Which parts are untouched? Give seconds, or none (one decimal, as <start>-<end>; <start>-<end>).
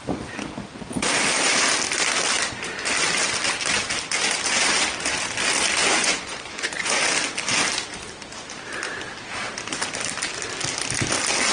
0.0-5.8; 7.0-11.5